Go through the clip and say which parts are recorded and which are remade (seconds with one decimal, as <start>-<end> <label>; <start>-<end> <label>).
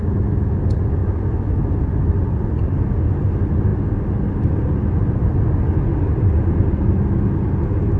0.0-0.6 remade; 0.6-1.0 recorded; 1.0-1.7 remade; 1.7-8.0 recorded